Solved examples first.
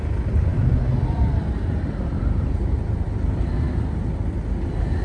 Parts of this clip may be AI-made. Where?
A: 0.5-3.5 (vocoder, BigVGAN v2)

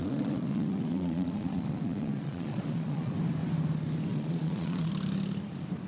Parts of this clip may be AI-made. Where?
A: 0.0-3.1 (vocoder, Vocos); 4.1-4.9

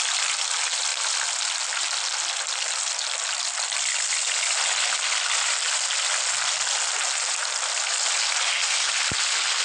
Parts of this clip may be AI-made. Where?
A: none

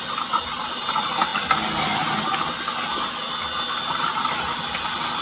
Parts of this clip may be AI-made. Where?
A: none

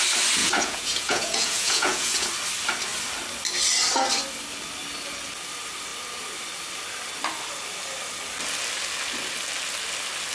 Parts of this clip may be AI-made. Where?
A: 0.4-2.3 (vocoder, Vocos)

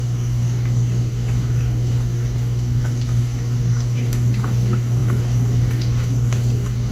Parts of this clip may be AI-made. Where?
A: 0.0-6.9 (codec, DAC)

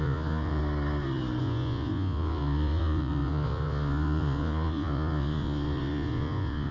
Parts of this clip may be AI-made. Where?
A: 0.0-0.6 (vocoder, Vocos); 1.4-6.7

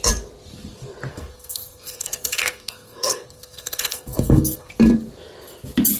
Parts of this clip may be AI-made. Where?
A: 1.1-4.7 (codec, SNAC)